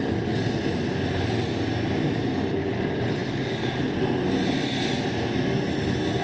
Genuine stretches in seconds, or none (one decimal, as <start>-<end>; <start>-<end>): 0.0-6.2

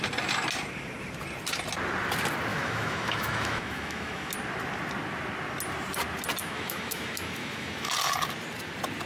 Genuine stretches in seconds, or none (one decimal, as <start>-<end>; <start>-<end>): 0.0-2.5; 4.3-6.4; 7.9-9.1

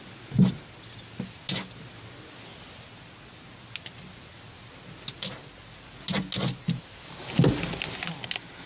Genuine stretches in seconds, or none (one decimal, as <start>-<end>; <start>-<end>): 0.0-8.7

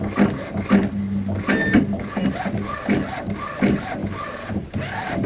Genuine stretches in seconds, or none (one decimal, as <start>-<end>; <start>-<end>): 0.0-5.3

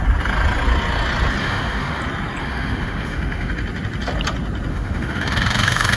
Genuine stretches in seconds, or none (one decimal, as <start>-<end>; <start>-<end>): 0.0-1.4; 2.0-2.4; 3.5-4.7

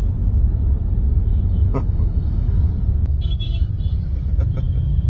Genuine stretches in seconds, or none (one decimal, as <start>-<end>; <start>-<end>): 0.0-1.3; 2.6-3.1; 3.7-5.1

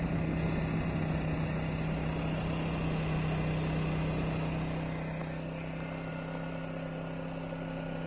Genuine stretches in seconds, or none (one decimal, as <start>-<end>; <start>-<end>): 0.0-8.1